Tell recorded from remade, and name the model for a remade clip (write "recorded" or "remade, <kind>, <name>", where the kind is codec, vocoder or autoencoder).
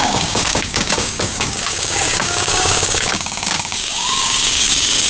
remade, codec, DAC